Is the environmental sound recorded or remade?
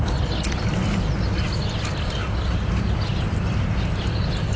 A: recorded